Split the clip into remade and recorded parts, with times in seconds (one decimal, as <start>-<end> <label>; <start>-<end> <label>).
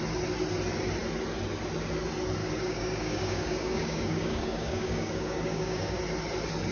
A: 0.0-2.4 recorded; 2.4-6.0 remade; 6.0-6.7 recorded